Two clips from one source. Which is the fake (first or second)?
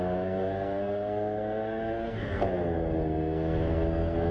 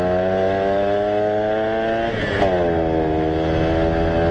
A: first